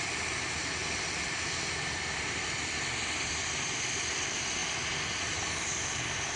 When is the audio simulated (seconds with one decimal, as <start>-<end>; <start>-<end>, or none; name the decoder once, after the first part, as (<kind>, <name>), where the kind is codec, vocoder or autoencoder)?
0.0-4.6 (vocoder, BigVGAN v2); 5.2-6.4